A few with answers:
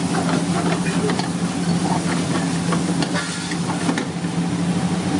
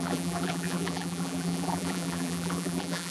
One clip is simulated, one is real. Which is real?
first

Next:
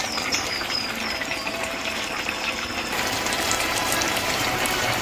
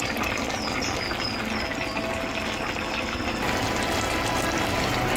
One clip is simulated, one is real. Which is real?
second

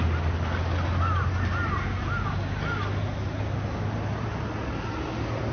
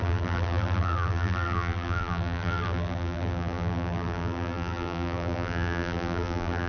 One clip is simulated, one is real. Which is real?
first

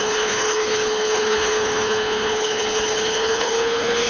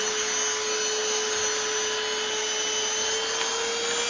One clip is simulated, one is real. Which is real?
second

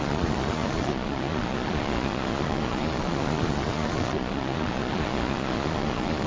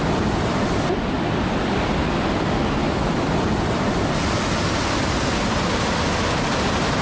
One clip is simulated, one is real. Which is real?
second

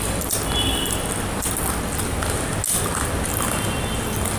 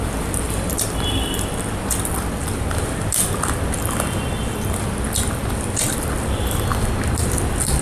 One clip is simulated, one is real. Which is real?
first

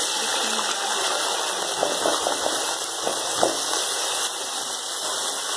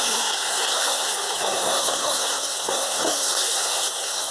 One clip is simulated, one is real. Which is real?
first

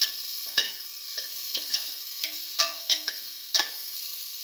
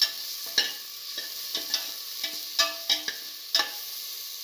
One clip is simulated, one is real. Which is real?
second